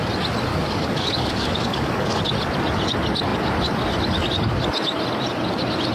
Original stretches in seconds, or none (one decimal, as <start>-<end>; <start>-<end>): 0.0-0.5; 2.2-5.9